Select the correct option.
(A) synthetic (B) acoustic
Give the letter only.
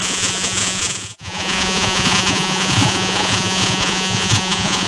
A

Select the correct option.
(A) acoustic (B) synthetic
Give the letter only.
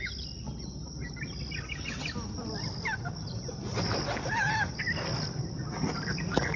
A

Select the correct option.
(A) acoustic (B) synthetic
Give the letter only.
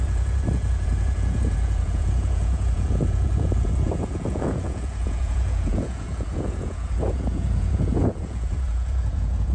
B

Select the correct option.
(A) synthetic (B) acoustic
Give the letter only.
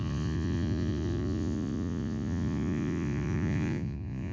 A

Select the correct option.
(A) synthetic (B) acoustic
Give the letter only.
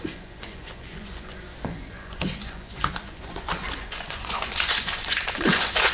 A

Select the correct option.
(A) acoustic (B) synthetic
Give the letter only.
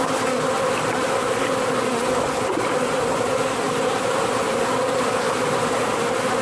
A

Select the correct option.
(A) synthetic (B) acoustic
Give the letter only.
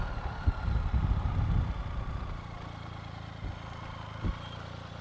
B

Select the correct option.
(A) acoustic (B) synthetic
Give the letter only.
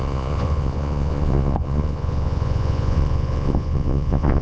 B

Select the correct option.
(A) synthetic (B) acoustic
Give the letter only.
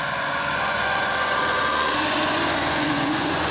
A